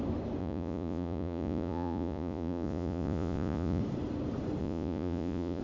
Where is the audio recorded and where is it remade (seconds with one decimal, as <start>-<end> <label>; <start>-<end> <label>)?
0.0-0.4 recorded; 0.4-3.8 remade; 3.8-4.6 recorded; 4.6-5.6 remade